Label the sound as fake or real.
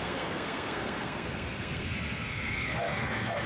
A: fake